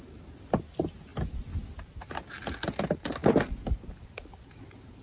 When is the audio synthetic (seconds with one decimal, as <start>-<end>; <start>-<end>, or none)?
none